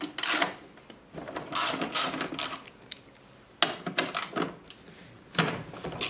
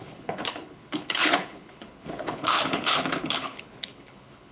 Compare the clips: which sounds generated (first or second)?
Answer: second